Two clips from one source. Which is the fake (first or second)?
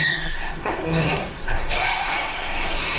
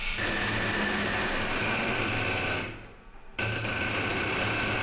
first